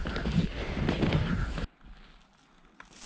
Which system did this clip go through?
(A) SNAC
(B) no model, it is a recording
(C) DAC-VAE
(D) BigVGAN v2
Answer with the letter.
B